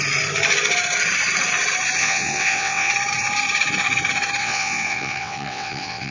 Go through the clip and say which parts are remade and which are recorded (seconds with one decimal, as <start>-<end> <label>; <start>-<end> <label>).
0.0-2.0 recorded; 2.0-2.9 remade; 2.9-4.4 recorded; 4.4-6.1 remade